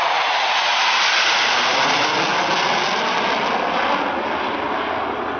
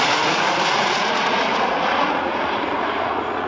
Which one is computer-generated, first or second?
second